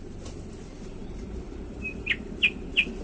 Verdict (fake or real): real